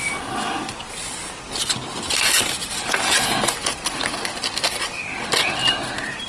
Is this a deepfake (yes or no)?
no